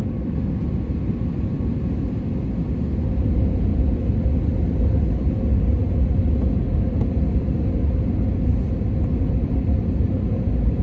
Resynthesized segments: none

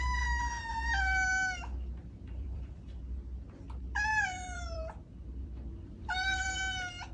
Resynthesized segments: 2.0-3.0 (vocoder, BigVGAN v2); 4.1-6.5

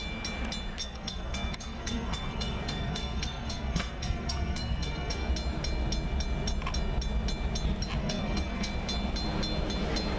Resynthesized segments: 0.8-5.3 (codec, SNAC); 8.0-8.7

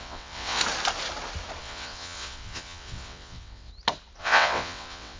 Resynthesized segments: 0.0-0.6 (vocoder, WaveNeXt); 1.6-3.7; 4.2-5.2

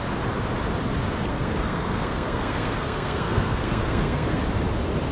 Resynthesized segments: 1.3-4.4 (codec, SNAC)

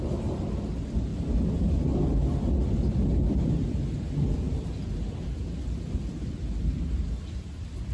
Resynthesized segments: none